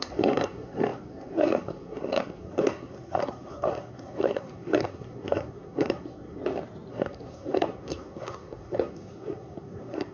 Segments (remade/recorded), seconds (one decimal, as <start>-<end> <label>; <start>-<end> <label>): 0.0-6.4 remade; 6.4-6.9 recorded; 6.9-10.1 remade